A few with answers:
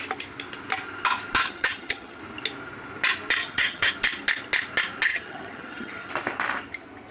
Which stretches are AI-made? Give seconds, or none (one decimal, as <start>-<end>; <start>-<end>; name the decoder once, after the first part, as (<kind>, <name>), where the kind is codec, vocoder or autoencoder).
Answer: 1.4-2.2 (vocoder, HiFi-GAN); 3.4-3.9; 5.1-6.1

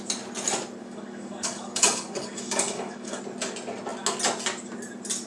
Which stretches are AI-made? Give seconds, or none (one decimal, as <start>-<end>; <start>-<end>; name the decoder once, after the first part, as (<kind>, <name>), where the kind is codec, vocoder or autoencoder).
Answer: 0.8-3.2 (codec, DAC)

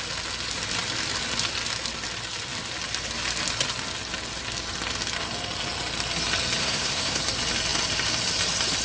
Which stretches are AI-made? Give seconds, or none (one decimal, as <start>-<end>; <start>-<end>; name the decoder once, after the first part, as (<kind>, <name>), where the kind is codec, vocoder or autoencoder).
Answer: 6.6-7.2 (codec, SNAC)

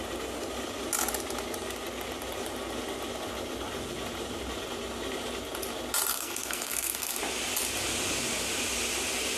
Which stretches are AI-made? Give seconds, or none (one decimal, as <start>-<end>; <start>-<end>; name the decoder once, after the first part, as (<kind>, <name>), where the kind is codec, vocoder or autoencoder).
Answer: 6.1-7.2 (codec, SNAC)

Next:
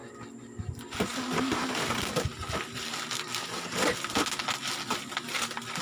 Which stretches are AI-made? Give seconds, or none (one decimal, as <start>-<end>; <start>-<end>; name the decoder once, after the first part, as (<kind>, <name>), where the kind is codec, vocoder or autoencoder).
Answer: none

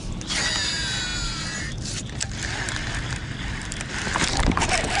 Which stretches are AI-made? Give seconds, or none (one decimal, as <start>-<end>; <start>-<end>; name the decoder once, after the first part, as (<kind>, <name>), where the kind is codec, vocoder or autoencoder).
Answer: none